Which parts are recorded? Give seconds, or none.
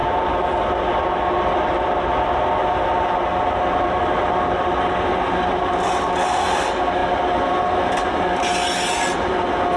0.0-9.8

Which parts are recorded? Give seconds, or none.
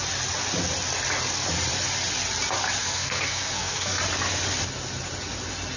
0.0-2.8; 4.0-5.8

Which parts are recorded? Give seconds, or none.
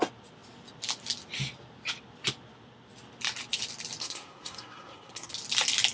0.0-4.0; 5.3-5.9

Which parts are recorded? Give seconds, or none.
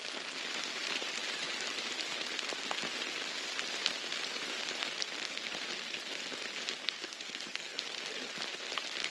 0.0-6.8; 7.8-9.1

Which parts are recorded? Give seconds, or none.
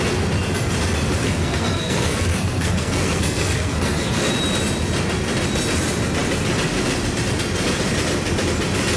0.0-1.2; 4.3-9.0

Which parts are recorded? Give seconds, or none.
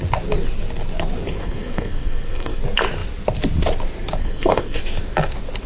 0.0-1.4; 2.6-4.2; 4.8-5.7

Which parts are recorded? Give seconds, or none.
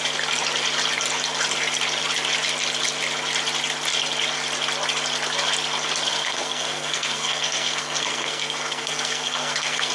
0.0-6.1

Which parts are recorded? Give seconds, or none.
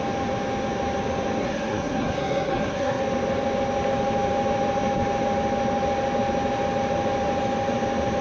0.0-1.4; 3.0-8.2